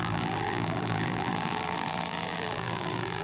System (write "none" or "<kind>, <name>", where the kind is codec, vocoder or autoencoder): vocoder, BigVGAN v2